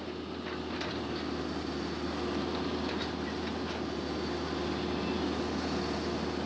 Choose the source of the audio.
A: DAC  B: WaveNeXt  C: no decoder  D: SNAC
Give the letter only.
C